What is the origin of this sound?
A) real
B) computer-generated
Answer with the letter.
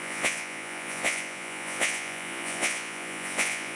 B